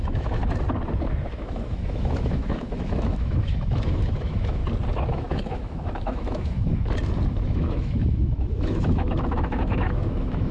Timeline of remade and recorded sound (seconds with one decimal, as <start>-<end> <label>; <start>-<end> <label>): 0.0-0.4 remade; 0.4-1.3 recorded; 1.3-4.6 remade; 4.6-5.1 recorded; 5.1-6.7 remade; 6.7-7.3 recorded; 7.3-10.5 remade

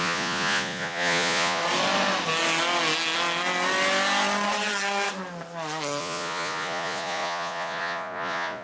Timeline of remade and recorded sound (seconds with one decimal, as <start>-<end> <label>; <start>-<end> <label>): 0.0-1.6 remade; 1.6-6.0 recorded; 6.0-8.6 remade

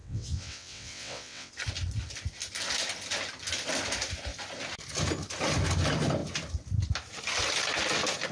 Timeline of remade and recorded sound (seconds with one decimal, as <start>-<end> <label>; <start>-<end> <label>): 0.0-1.5 remade; 1.5-8.3 recorded

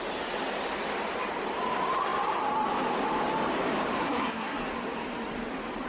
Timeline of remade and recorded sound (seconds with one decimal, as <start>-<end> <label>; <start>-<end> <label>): 0.0-4.0 recorded; 4.0-4.6 remade; 4.6-5.9 recorded

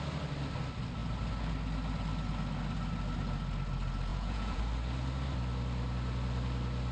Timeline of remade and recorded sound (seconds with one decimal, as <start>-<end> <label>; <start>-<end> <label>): 0.0-4.1 recorded; 4.1-4.6 remade; 4.6-6.9 recorded

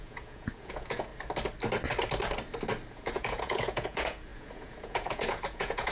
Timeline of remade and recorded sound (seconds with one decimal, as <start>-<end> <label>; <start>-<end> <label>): 0.0-1.1 remade; 1.1-2.9 recorded; 2.9-5.9 remade